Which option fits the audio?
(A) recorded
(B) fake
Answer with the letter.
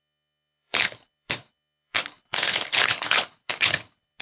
B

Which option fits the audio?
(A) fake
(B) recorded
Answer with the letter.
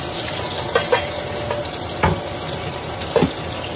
B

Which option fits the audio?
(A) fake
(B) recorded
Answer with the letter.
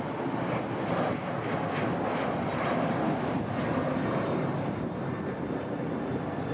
B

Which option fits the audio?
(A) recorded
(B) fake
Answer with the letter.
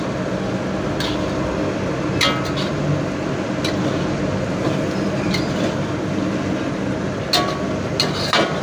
A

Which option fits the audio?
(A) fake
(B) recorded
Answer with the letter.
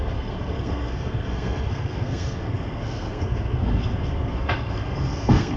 A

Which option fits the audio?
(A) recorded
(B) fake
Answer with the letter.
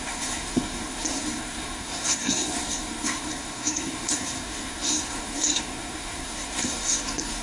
B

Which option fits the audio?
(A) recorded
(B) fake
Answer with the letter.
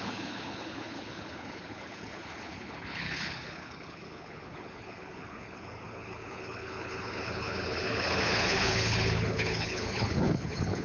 B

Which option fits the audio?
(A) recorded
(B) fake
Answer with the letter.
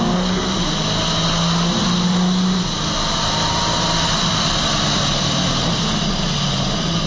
A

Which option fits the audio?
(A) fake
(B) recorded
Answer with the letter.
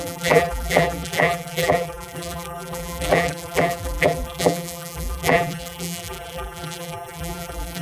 A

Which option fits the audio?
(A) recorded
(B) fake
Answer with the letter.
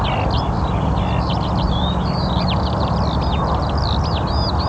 A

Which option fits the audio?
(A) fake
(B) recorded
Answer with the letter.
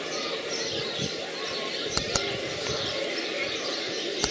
B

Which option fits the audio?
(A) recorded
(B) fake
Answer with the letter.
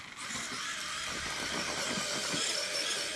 A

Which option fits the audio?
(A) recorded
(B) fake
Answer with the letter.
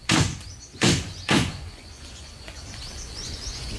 B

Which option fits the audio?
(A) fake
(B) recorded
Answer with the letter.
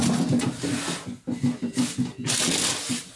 B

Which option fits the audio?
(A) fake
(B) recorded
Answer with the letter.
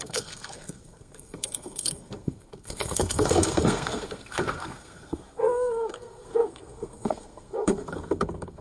A